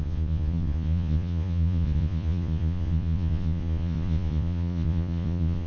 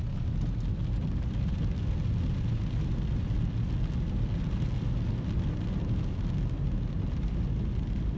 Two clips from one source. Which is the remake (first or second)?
first